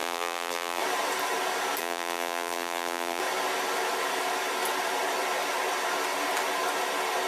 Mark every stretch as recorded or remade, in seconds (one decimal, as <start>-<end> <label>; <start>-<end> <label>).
0.0-0.8 remade; 0.8-1.8 recorded; 1.8-3.2 remade; 3.2-7.3 recorded